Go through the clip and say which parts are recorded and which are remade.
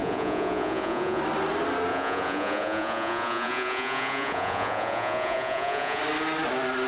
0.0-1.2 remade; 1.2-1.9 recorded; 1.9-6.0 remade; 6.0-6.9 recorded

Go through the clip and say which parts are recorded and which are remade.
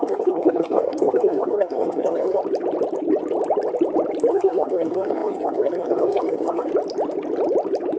0.0-2.4 remade; 2.4-4.3 recorded; 4.3-6.7 remade; 6.7-8.0 recorded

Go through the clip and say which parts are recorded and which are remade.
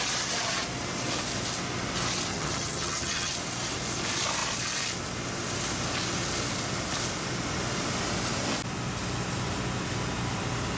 0.0-2.3 recorded; 2.3-3.3 remade; 3.3-10.8 recorded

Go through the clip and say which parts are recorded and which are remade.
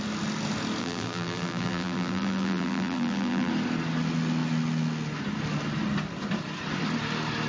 0.0-0.8 recorded; 0.8-3.5 remade; 3.5-7.5 recorded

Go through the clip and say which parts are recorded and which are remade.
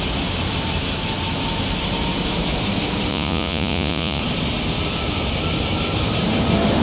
0.0-3.1 recorded; 3.1-4.2 remade; 4.2-6.8 recorded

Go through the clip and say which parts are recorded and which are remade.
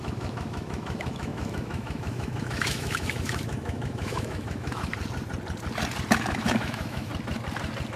0.0-4.9 remade; 4.9-6.1 recorded; 6.1-7.1 remade; 7.1-8.0 recorded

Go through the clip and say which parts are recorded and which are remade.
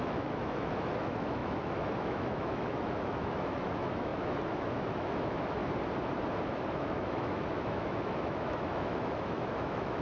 0.0-5.6 remade; 5.6-6.7 recorded; 6.7-10.0 remade